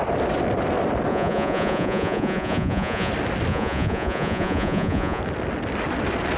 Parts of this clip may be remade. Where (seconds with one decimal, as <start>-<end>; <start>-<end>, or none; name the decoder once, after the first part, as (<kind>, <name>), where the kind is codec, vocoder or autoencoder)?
1.1-3.1 (vocoder, Vocos); 3.5-5.2